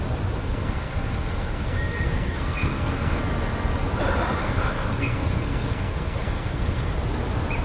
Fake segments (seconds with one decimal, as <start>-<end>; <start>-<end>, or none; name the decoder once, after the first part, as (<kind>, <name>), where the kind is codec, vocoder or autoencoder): 0.4-3.2 (codec, SNAC); 4.4-6.9